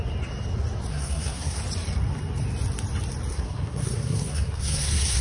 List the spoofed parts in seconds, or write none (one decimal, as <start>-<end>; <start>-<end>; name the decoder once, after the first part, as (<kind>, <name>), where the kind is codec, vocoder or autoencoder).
0.9-1.6 (codec, SNAC); 3.3-5.2